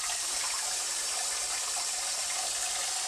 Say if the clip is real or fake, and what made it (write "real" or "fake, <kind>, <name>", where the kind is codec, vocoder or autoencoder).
fake, vocoder, BigVGAN v2